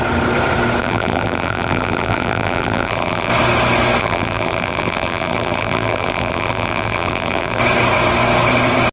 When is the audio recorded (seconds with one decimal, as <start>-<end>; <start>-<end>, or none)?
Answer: 0.0-0.8; 3.3-4.0; 7.6-8.9